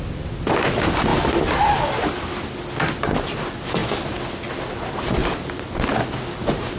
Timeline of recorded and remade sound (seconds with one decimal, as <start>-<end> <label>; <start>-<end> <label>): 0.0-6.8 recorded